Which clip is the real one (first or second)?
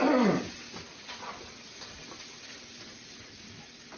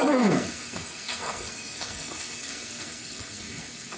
first